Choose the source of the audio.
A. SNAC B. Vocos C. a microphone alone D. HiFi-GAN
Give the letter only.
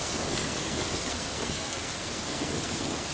A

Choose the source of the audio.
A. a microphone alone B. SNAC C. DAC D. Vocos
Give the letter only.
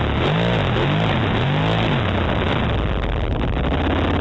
A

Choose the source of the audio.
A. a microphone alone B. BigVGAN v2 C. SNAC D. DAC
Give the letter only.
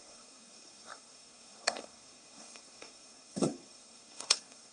C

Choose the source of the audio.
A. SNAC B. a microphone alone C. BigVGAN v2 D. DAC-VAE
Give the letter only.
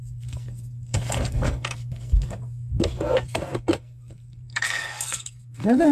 A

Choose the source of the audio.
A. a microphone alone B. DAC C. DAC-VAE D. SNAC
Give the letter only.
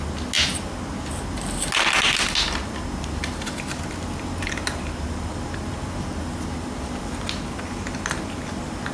A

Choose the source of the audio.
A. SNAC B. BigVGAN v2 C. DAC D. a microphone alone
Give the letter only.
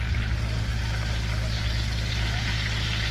D